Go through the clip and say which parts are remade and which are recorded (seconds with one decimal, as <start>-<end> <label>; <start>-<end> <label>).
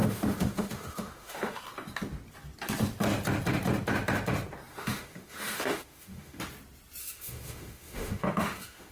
0.0-1.6 remade; 1.6-4.7 recorded; 4.7-6.4 remade; 6.4-7.0 recorded; 7.0-8.9 remade